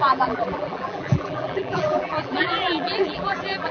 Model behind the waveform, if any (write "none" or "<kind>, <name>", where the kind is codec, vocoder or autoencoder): vocoder, BigVGAN v2